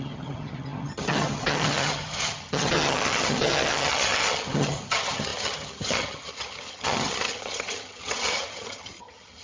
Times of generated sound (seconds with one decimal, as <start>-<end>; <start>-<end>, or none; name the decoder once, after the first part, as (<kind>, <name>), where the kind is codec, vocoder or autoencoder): 0.0-9.4 (vocoder, HiFi-GAN)